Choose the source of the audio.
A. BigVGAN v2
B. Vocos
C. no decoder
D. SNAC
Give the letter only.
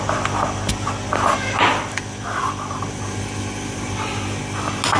C